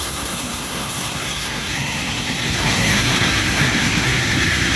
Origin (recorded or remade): remade